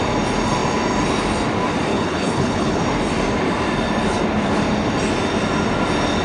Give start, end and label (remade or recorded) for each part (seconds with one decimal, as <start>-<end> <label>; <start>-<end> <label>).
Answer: 0.0-1.9 recorded; 1.9-2.8 remade; 2.8-6.2 recorded